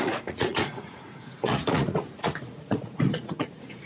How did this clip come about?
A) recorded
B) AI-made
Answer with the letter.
B